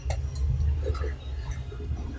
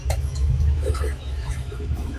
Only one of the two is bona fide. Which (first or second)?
first